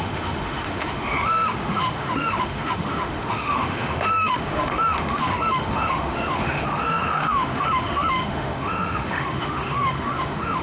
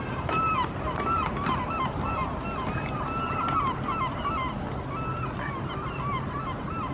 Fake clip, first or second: first